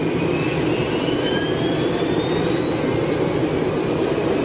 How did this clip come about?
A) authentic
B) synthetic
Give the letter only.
A